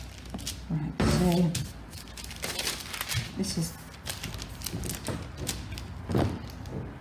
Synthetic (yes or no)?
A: no